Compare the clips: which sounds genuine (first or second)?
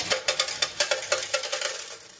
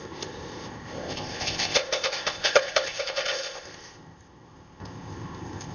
first